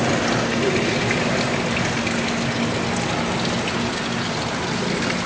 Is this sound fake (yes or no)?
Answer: no